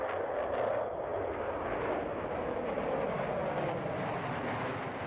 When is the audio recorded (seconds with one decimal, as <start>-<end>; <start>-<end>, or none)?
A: 0.0-5.1